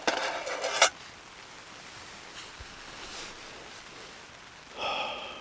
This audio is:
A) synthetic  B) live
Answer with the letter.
B